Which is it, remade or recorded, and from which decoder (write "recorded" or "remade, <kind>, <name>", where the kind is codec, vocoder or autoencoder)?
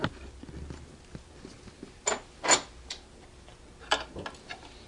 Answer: recorded